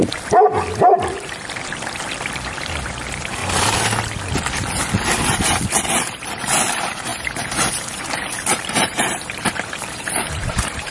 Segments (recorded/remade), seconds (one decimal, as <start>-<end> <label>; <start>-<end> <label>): 0.0-3.4 remade; 3.4-5.3 recorded; 5.3-10.9 remade